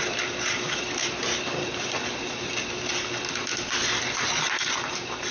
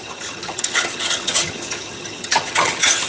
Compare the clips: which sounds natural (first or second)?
first